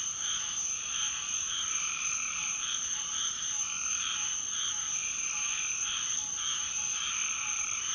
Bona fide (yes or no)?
no